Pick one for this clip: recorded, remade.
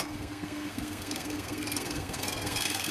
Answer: remade